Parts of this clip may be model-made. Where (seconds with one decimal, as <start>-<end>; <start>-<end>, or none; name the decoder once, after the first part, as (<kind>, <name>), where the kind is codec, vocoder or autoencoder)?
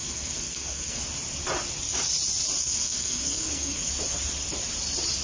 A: 0.0-1.0 (codec, SNAC); 2.6-3.9